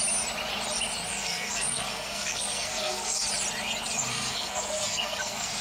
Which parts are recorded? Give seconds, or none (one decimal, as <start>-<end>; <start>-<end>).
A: 0.0-1.1; 3.3-4.1